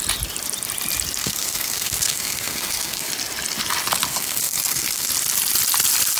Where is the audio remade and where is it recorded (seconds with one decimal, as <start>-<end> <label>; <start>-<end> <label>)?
0.0-1.2 recorded; 1.2-3.1 remade; 3.1-4.1 recorded; 4.1-5.1 remade; 5.1-6.2 recorded